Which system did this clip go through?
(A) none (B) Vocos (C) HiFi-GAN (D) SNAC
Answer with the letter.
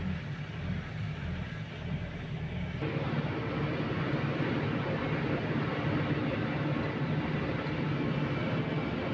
A